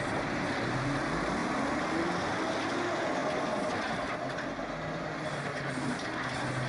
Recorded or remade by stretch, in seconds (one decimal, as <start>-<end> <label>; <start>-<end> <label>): 0.0-6.7 recorded

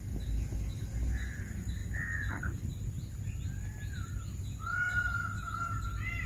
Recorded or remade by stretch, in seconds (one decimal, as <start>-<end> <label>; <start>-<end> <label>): 0.0-6.3 recorded

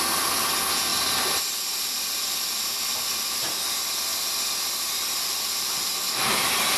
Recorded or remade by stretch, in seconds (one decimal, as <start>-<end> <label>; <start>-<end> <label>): 0.0-6.8 remade